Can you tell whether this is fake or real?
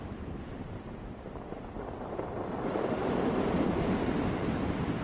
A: fake